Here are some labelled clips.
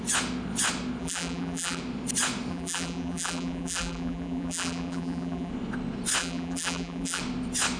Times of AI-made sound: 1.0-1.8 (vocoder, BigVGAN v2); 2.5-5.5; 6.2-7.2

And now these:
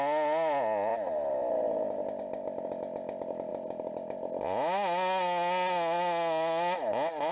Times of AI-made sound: none

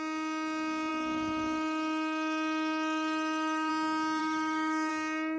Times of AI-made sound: 0.9-3.7 (autoencoder, DAC-VAE); 4.2-4.9

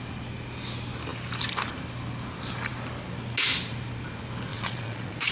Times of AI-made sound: 4.5-5.3 (vocoder, Vocos)

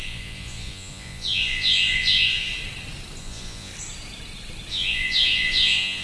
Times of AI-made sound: 0.0-2.5 (vocoder, Vocos); 3.2-3.7; 4.7-6.0

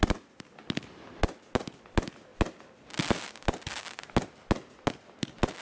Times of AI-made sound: none